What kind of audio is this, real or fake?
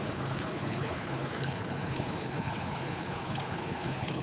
fake